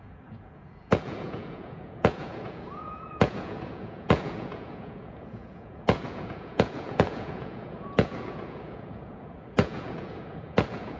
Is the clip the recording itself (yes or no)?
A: no